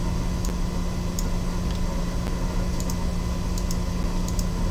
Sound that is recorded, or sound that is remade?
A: recorded